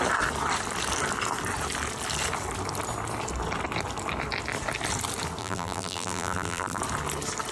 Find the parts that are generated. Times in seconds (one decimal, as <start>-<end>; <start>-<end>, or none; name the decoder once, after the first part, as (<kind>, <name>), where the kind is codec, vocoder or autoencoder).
5.4-6.8 (vocoder, BigVGAN v2)